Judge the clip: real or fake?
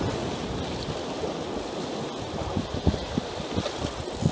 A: real